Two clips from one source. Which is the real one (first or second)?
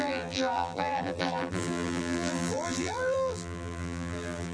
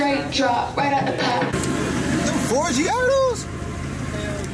second